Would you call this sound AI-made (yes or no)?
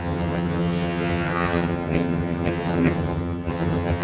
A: yes